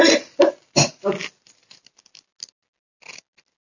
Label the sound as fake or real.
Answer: real